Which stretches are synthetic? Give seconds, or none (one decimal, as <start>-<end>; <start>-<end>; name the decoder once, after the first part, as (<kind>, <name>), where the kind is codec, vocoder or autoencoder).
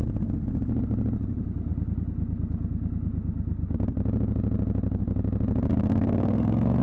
5.7-6.8 (codec, SNAC)